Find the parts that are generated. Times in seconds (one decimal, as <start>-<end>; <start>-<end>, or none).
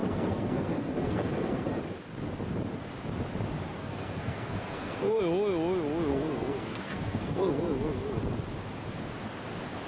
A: 0.0-1.8; 3.7-5.2; 6.1-8.2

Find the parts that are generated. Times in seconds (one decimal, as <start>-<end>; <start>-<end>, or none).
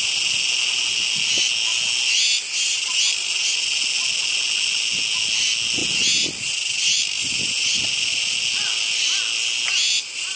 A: none